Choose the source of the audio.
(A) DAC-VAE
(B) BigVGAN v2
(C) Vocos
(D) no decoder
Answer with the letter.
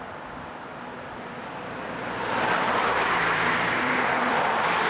B